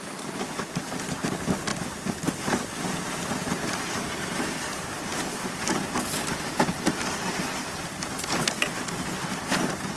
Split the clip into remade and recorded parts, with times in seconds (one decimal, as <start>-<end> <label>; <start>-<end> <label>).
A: 0.0-10.0 recorded